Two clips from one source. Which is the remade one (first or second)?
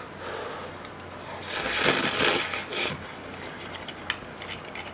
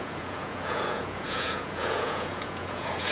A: second